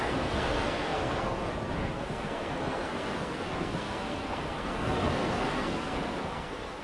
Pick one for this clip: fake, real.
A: fake